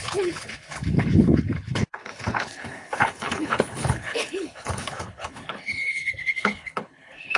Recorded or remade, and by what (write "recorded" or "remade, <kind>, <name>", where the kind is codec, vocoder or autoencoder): remade, codec, HILCodec